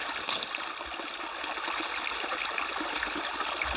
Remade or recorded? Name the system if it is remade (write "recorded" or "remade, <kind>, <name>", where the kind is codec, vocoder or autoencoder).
recorded